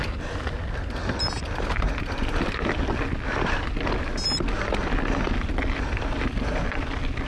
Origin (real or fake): real